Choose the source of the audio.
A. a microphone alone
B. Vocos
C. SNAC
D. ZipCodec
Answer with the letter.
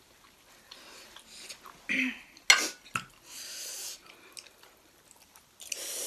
A